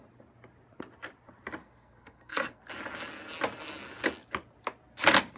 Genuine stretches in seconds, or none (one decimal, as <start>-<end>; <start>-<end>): 0.0-1.6; 2.6-5.4

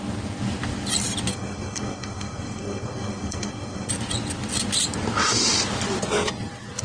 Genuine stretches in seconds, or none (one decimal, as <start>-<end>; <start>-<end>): 0.0-1.3; 3.9-6.8

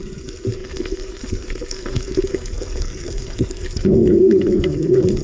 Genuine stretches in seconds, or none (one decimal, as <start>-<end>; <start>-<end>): none

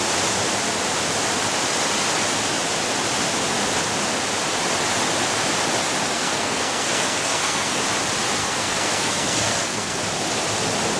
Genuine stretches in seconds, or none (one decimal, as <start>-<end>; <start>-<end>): 0.0-6.1; 7.8-8.4; 10.0-11.0